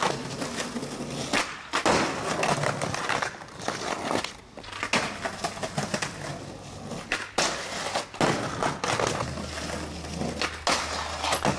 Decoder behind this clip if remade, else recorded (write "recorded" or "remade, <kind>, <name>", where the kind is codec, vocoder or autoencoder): recorded